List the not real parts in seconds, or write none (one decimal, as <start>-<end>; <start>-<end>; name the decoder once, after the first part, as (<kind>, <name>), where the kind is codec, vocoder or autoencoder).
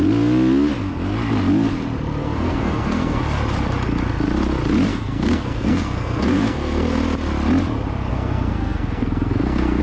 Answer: 2.2-3.2 (codec, SNAC); 4.9-7.0; 8.1-9.8